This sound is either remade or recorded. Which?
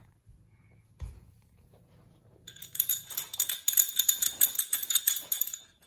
remade